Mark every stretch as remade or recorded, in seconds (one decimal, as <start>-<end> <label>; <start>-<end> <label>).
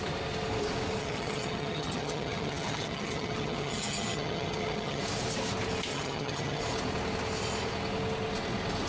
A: 0.0-1.0 recorded; 1.0-5.0 remade; 5.0-5.9 recorded; 5.9-6.6 remade; 6.6-8.9 recorded